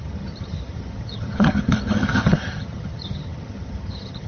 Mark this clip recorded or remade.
remade